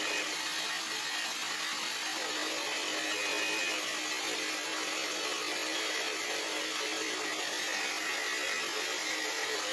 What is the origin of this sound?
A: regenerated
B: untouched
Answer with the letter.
B